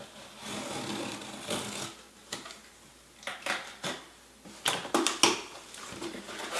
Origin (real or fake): real